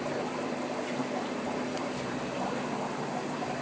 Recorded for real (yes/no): yes